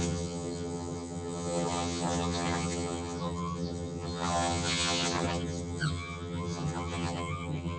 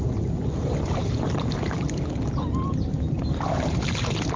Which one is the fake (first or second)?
first